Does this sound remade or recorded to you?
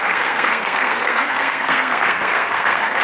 remade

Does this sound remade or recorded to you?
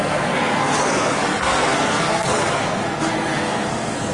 remade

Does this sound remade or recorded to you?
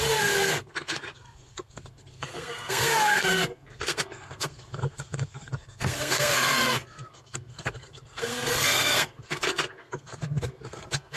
remade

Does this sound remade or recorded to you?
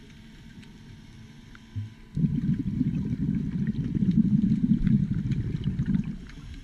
recorded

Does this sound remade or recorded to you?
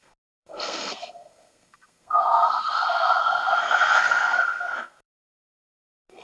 remade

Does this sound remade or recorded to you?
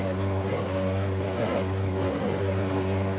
remade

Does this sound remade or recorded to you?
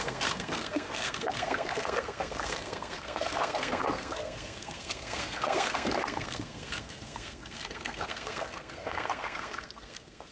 remade